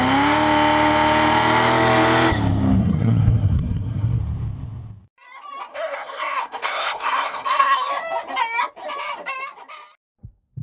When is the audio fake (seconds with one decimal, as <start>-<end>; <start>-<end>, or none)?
2.8-4.2; 5.7-7.9